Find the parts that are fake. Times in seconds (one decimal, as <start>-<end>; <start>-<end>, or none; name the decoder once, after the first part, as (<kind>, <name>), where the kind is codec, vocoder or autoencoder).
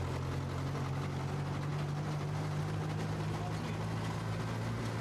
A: none